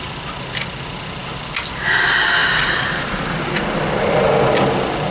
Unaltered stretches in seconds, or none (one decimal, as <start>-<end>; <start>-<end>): 0.0-2.4; 3.5-5.1